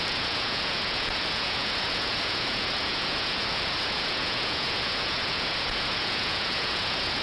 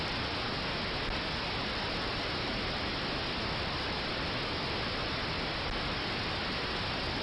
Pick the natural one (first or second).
second